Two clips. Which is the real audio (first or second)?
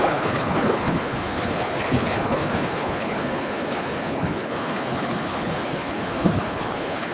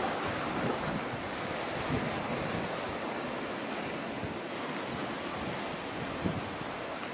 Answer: second